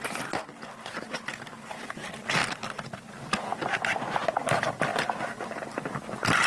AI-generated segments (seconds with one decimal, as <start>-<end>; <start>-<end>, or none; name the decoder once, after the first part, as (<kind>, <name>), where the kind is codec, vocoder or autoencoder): 4.9-6.5 (vocoder, BigVGAN v2)